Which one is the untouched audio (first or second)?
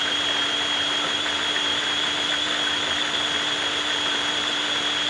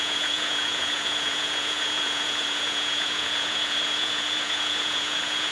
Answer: first